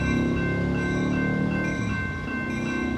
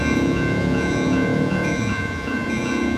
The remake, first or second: second